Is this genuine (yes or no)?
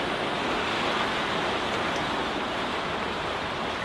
yes